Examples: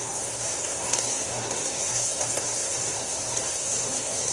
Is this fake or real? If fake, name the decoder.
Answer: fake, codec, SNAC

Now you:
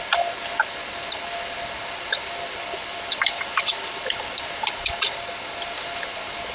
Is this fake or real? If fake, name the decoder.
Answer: real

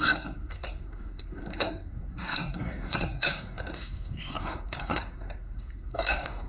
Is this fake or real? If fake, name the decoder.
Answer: fake, codec, SNAC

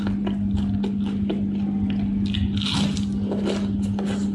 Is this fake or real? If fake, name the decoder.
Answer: real